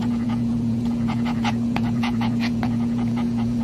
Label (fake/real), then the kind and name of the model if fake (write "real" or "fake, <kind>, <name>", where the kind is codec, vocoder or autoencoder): fake, vocoder, Vocos